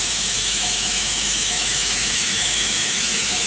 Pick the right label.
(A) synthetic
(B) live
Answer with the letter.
A